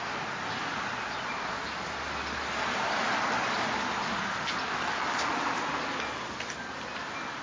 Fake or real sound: real